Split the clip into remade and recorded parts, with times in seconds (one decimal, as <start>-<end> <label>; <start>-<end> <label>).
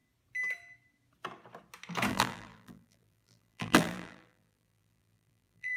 0.0-2.1 recorded; 2.1-5.8 remade